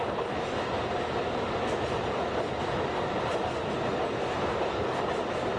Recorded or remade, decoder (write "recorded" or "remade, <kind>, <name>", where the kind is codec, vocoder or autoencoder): recorded